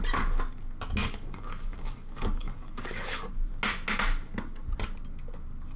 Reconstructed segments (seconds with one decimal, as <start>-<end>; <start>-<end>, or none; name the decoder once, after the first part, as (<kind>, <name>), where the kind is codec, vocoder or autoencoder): 1.0-3.3 (codec, DAC)